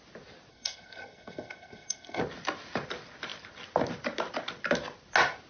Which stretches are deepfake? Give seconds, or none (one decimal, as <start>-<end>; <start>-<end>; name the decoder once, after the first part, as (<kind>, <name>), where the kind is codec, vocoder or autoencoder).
0.5-2.2 (codec, SNAC)